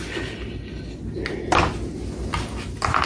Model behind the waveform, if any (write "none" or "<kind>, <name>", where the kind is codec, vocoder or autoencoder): none